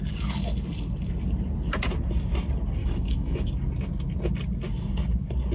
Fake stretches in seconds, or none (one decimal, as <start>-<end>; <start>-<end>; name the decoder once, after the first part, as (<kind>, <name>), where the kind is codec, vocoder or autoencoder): 2.8-3.5 (autoencoder, DAC-VAE)

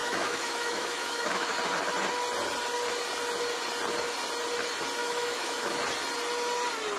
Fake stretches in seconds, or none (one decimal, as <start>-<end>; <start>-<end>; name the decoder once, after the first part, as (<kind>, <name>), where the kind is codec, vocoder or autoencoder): 0.0-1.5 (autoencoder, DAC-VAE); 5.0-5.8

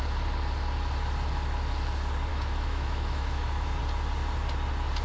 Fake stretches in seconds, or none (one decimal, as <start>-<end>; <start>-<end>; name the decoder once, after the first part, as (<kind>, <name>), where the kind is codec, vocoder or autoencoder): 2.3-3.8 (autoencoder, DAC-VAE)

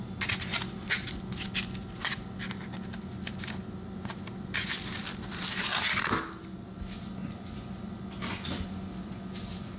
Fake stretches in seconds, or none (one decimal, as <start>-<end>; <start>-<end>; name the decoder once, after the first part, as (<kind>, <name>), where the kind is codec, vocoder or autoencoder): none

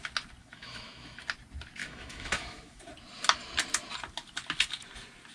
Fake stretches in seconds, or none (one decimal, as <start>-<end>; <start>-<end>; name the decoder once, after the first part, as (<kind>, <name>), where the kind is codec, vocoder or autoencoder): 0.4-1.2 (autoencoder, DAC-VAE); 1.8-2.8

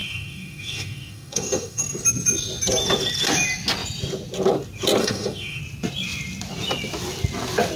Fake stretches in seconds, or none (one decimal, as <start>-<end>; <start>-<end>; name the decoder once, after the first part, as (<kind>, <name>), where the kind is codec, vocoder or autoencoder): 0.0-1.8 (autoencoder, DAC-VAE); 5.0-5.6